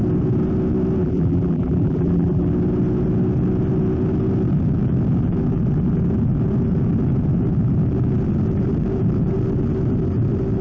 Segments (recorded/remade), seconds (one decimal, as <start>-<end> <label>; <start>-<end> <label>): 0.0-1.0 recorded; 1.0-2.5 remade; 2.5-10.6 recorded